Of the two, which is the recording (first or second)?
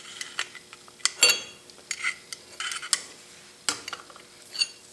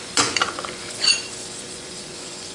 first